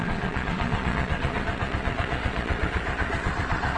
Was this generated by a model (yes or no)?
yes